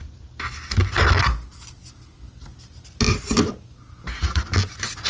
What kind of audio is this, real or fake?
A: real